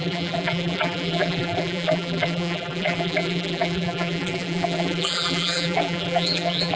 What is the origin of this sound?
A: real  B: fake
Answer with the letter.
B